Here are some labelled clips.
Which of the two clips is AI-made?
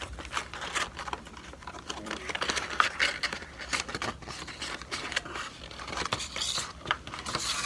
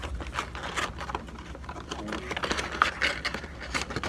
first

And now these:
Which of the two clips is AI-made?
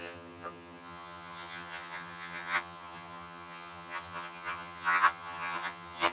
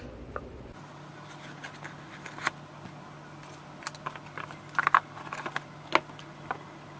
first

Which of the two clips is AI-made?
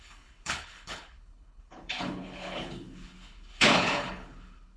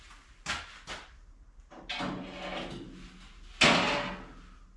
first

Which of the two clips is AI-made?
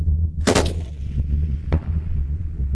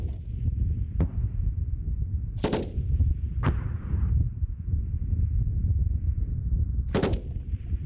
first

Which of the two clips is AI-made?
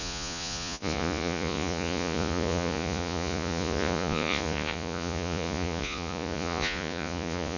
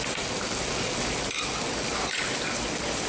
first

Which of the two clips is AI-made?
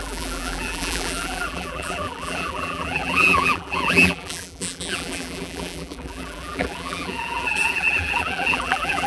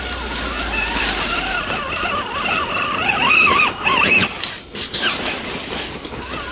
first